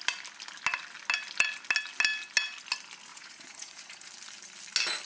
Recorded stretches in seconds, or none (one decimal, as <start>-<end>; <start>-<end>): 0.0-3.1; 4.1-5.1